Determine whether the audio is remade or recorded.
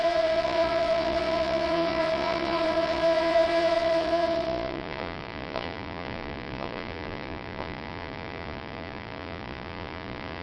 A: remade